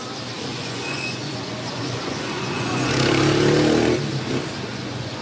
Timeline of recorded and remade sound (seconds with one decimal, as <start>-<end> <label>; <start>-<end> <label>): 0.0-0.5 recorded; 0.5-2.9 remade; 2.9-4.7 recorded; 4.7-5.2 remade